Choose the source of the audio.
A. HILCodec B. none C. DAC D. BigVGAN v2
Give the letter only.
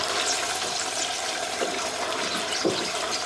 D